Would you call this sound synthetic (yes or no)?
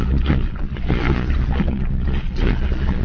yes